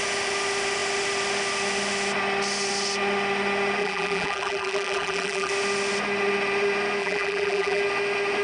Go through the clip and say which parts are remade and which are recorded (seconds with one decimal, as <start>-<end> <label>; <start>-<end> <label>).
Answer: 0.0-3.8 recorded; 3.8-5.5 remade; 5.5-7.0 recorded; 7.0-7.8 remade; 7.8-8.4 recorded

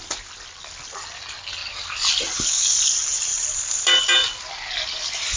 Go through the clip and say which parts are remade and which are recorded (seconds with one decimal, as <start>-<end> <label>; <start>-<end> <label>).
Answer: 0.0-5.4 recorded

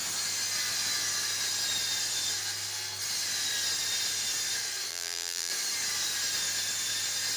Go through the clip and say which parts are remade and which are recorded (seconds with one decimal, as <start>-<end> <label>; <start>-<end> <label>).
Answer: 0.0-4.9 recorded; 4.9-5.5 remade; 5.5-7.4 recorded